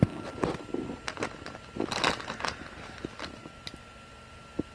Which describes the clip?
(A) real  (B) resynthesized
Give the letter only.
A